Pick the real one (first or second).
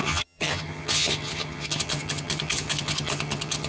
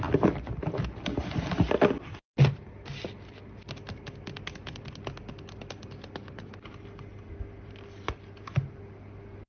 second